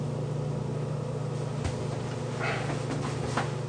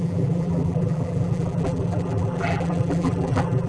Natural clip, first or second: first